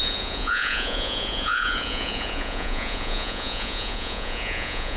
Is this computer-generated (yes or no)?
yes